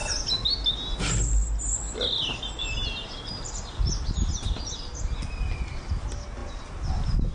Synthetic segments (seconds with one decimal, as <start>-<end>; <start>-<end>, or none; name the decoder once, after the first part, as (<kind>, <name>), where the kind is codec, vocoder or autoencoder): none